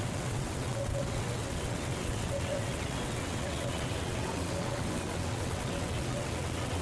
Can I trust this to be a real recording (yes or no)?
no